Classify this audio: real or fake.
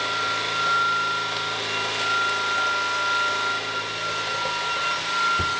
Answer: real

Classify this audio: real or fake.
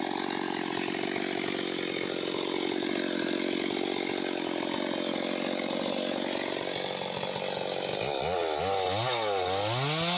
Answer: real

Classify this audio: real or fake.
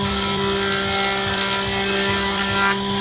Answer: real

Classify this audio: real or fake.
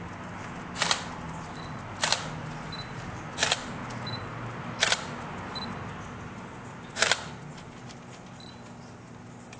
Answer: real